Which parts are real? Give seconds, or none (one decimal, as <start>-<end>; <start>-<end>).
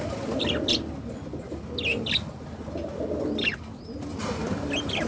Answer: 0.0-5.1